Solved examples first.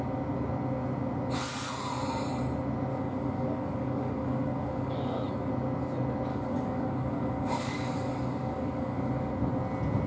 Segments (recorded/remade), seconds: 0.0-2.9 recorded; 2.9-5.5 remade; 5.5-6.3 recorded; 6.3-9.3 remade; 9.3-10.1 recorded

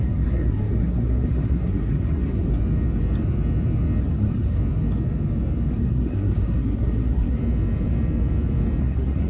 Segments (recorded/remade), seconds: 0.0-2.5 remade; 2.5-4.0 recorded; 4.0-4.6 remade; 4.6-5.7 recorded; 5.7-7.4 remade; 7.4-8.8 recorded; 8.8-9.3 remade

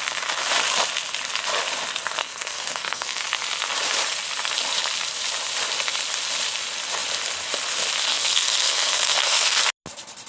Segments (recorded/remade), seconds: 0.0-2.2 recorded; 2.2-3.2 remade; 3.2-8.1 recorded; 8.1-9.6 remade; 9.6-10.3 recorded

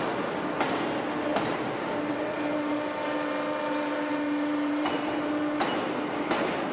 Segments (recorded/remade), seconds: 0.0-1.3 recorded; 1.3-5.3 remade; 5.3-6.7 recorded

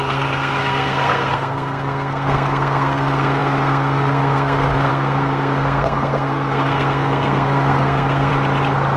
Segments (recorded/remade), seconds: 0.0-8.3 remade; 8.3-9.0 recorded

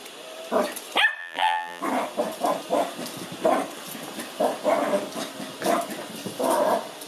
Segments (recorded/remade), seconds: 0.0-1.2 recorded; 1.2-1.8 remade; 1.8-7.1 recorded